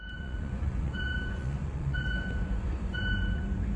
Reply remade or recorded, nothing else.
remade